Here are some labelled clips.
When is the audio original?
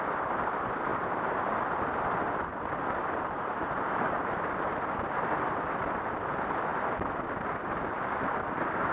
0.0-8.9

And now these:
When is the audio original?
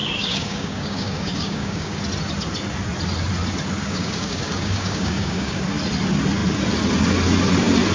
2.0-3.8; 5.6-7.9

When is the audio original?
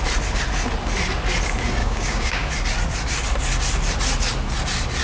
0.0-1.8; 2.5-5.0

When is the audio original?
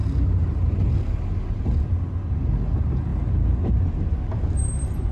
0.0-5.1